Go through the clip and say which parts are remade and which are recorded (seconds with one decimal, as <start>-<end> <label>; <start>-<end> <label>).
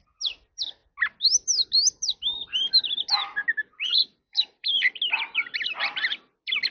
0.0-3.7 recorded; 3.7-4.7 remade; 4.7-6.7 recorded